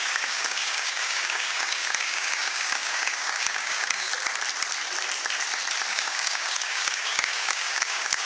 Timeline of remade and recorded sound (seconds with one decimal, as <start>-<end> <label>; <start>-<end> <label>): 0.0-4.1 remade; 4.1-5.9 recorded; 5.9-8.3 remade

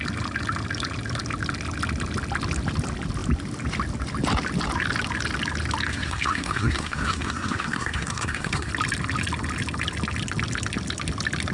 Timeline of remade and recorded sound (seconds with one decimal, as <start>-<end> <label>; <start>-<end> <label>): 0.0-5.9 recorded; 5.9-8.7 remade; 8.7-11.5 recorded

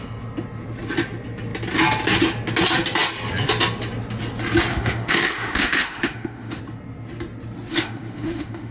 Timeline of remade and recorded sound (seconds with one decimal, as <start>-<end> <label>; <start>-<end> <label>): 0.0-4.7 recorded; 4.7-6.6 remade; 6.6-7.7 recorded; 7.7-8.7 remade

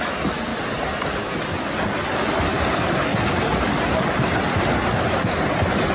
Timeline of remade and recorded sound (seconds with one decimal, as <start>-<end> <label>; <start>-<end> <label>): 0.0-5.9 recorded